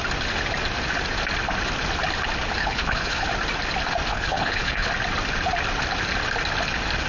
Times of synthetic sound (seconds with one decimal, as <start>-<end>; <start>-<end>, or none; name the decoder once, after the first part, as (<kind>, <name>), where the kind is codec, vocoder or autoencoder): 2.6-3.3 (codec, HILCodec); 4.1-4.9